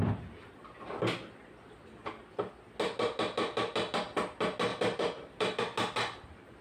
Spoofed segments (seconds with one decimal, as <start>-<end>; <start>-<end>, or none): 4.7-5.6